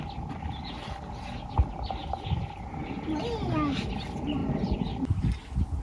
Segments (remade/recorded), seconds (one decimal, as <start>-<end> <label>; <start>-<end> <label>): 0.0-2.0 recorded; 2.0-2.9 remade; 2.9-4.4 recorded; 4.4-5.8 remade

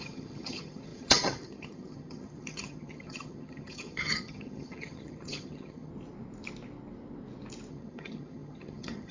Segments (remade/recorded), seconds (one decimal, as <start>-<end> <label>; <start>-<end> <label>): 0.0-5.9 remade; 5.9-7.7 recorded; 7.7-9.1 remade

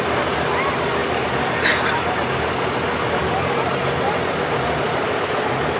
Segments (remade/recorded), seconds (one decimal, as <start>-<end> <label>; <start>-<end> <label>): 0.0-5.8 recorded

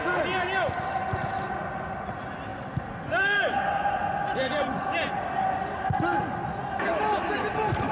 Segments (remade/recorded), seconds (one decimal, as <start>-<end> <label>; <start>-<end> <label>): 0.0-7.9 recorded

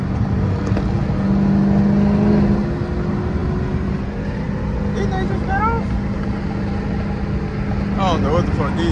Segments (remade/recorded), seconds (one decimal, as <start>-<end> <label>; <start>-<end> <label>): 0.0-8.9 recorded